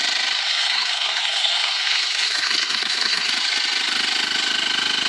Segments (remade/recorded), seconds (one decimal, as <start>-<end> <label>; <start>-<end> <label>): 0.0-0.4 recorded; 0.4-3.3 remade; 3.3-5.1 recorded